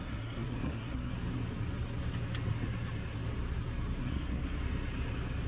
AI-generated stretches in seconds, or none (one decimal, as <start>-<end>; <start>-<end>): 0.0-1.1; 4.0-4.6